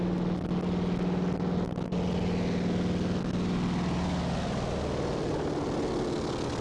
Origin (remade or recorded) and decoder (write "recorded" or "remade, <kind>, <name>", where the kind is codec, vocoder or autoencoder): recorded